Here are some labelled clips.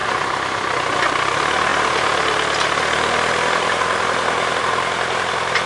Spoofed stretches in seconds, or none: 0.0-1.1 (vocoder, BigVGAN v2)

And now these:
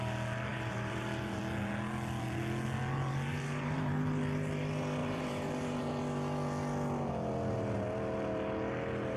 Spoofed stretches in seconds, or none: 0.5-1.4 (vocoder, BigVGAN v2); 3.3-3.9; 5.0-6.0

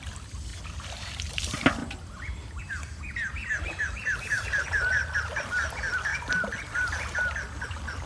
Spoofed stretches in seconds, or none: 0.5-1.4 (vocoder, BigVGAN v2); 4.3-4.9

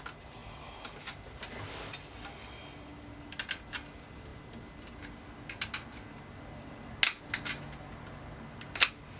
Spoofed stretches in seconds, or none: none